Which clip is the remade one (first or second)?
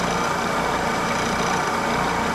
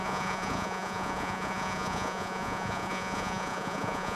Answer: second